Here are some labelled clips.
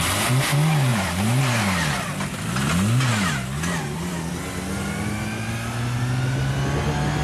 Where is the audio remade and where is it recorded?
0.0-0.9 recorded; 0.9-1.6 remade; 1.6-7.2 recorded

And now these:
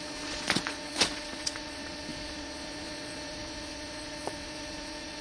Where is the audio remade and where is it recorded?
0.0-5.2 remade

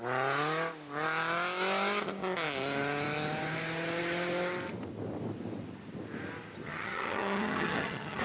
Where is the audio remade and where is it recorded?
0.0-6.6 recorded; 6.6-8.2 remade

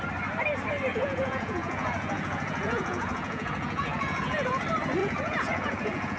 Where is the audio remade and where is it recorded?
0.0-0.9 recorded; 0.9-4.6 remade; 4.6-5.0 recorded; 5.0-6.2 remade

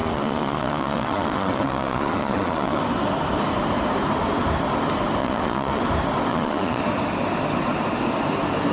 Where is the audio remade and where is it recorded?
0.0-2.8 remade; 2.8-5.2 recorded; 5.2-5.8 remade; 5.8-6.3 recorded; 6.3-6.8 remade; 6.8-8.7 recorded

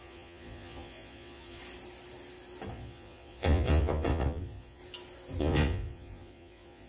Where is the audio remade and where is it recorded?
0.0-1.6 remade; 1.6-2.7 recorded; 2.7-4.8 remade; 4.8-5.4 recorded; 5.4-6.9 remade

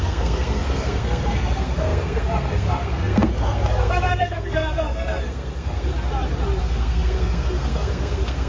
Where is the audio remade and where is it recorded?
0.0-5.9 remade; 5.9-6.6 recorded; 6.6-8.5 remade

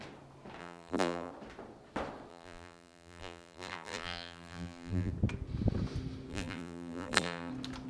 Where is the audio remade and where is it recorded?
0.0-0.6 recorded; 0.6-1.3 remade; 1.3-2.3 recorded; 2.3-5.1 remade; 5.1-6.3 recorded; 6.3-7.5 remade; 7.5-7.9 recorded